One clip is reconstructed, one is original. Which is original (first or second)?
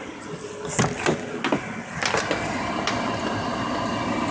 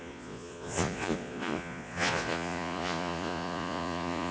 first